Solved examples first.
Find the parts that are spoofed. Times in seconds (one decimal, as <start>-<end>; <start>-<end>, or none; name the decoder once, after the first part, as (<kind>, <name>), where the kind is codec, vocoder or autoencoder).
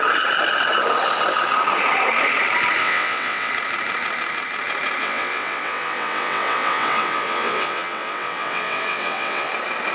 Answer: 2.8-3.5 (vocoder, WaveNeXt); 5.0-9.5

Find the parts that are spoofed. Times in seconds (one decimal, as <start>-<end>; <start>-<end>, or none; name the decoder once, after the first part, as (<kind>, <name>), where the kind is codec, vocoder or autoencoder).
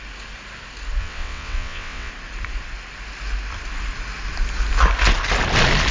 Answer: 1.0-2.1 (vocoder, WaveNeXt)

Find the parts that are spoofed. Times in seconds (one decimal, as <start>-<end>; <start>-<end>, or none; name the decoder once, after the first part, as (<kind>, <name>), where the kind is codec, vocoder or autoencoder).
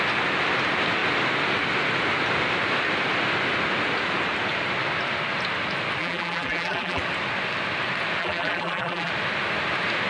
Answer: 6.0-7.0 (vocoder, BigVGAN v2); 8.2-9.1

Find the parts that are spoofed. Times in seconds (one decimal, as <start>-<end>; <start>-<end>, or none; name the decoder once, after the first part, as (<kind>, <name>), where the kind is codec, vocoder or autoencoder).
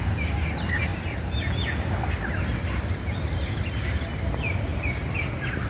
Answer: 4.7-5.7 (vocoder, BigVGAN v2)